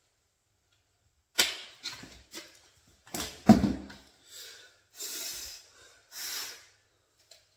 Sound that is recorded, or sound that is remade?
recorded